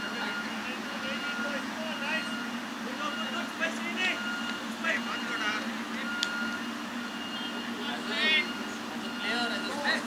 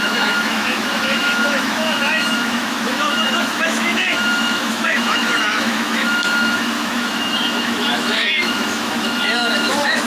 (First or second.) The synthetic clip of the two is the second